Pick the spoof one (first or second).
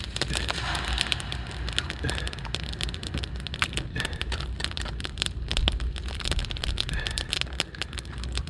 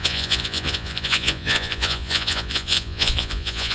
second